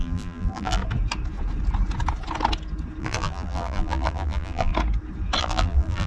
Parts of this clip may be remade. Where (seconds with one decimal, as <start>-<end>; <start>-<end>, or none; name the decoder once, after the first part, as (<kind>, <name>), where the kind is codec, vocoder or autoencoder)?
0.0-0.8 (vocoder, BigVGAN v2); 3.0-4.7; 5.4-6.1